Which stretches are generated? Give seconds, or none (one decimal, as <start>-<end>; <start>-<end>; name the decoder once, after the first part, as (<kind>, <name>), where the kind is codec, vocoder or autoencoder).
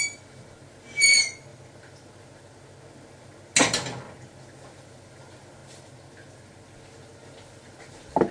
none